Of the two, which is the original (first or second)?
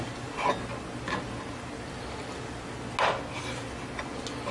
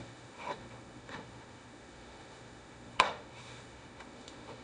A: first